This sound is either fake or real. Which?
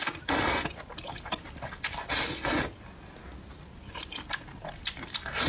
real